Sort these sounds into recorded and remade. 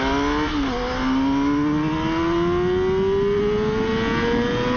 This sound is recorded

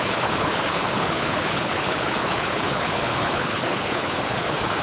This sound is remade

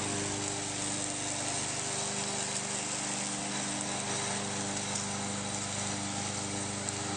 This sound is recorded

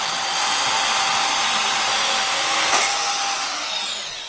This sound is recorded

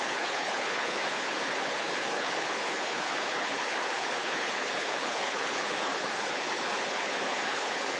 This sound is remade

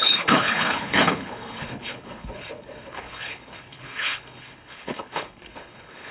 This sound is remade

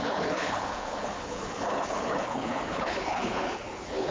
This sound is remade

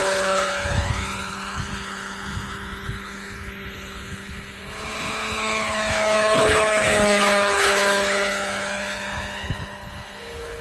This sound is remade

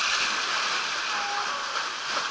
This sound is recorded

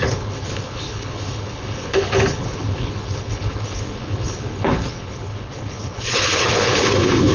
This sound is remade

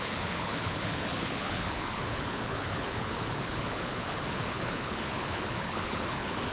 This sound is remade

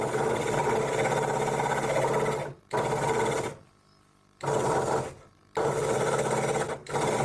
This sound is recorded